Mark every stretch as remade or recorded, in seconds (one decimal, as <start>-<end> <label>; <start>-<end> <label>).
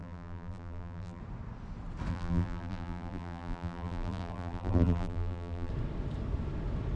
0.0-1.2 remade; 1.2-2.1 recorded; 2.1-5.7 remade; 5.7-7.0 recorded